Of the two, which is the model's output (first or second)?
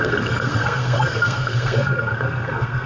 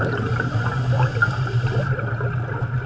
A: first